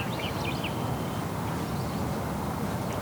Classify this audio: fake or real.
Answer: real